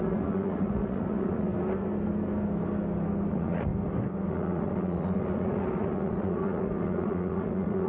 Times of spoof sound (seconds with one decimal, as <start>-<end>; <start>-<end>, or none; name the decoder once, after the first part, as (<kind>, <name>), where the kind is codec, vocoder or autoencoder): 0.0-1.5 (vocoder, Vocos); 3.3-3.7; 4.3-7.9